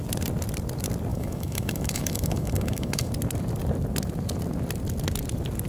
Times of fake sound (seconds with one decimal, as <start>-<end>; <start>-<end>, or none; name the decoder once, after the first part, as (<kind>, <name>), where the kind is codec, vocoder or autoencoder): 1.1-3.1 (autoencoder, DAC-VAE)